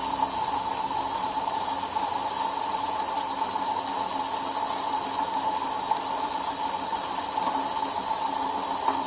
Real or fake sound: real